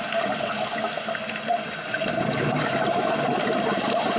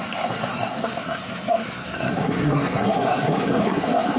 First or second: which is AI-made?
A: second